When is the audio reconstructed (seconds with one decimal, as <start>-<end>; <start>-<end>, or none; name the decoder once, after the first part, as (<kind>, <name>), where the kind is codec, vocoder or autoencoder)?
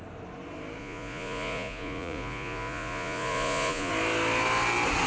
0.8-3.9 (vocoder, Vocos)